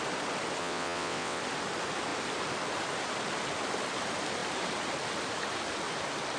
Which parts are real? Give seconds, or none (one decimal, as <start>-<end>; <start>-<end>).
0.0-0.6; 1.4-6.4